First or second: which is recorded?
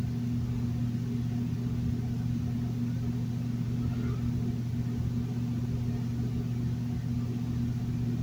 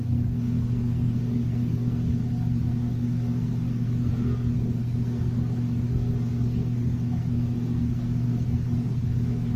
first